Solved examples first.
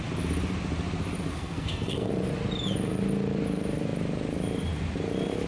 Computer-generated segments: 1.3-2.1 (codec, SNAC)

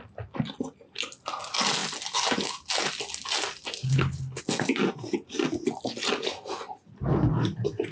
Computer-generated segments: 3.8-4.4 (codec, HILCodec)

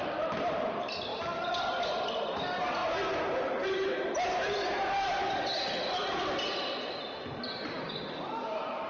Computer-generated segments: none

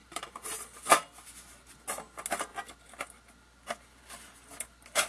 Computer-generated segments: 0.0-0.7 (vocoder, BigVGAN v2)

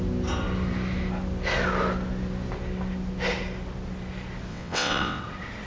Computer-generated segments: 4.5-5.2 (vocoder, WaveNeXt)

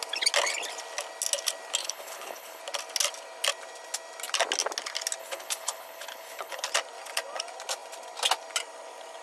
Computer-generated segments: 1.8-2.6 (codec, HILCodec); 5.2-6.7

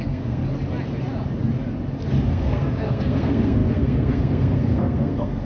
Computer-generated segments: 0.0-0.4 (codec, SNAC); 2.3-5.4

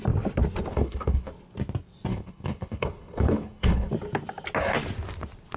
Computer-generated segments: 0.7-1.3 (codec, HILCodec); 2.1-3.9